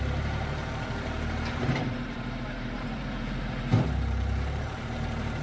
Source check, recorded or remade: remade